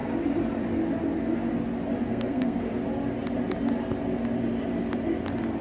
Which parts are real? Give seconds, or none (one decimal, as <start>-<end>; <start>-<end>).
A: 0.0-2.1; 2.6-5.6